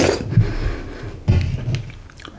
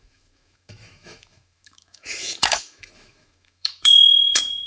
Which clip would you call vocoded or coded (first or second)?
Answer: second